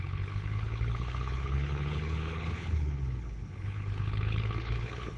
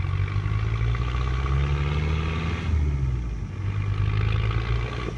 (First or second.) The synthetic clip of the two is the first